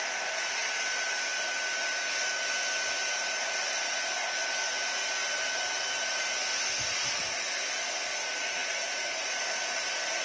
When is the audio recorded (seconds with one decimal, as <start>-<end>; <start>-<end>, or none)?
0.0-5.2; 6.2-8.6